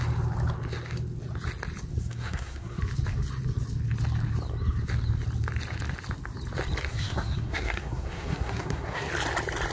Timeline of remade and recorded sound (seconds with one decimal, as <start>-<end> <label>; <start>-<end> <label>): 0.0-1.9 recorded; 1.9-2.8 remade; 2.8-6.9 recorded; 6.9-9.1 remade; 9.1-9.7 recorded